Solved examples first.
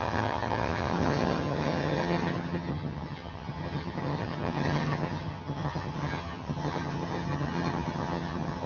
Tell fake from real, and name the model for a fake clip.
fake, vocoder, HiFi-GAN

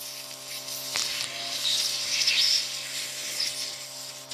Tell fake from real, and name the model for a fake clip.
real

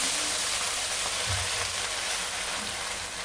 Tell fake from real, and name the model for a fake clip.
real